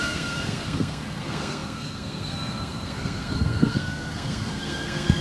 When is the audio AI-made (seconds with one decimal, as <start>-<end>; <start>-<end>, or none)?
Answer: 0.0-5.2